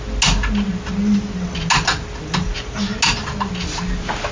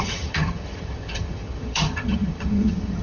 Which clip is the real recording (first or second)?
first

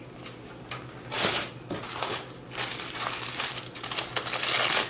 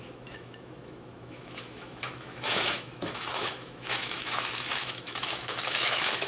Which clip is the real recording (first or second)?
first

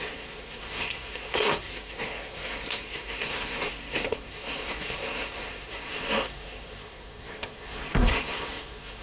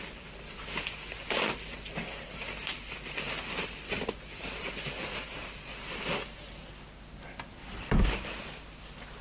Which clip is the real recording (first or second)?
second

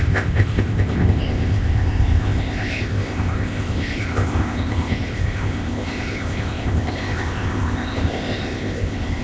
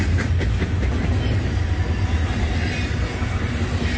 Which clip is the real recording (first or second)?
second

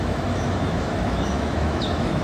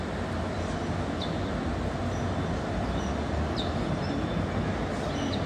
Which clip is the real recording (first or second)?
second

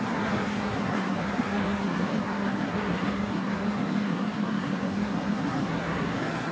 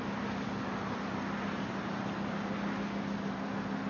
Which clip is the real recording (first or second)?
second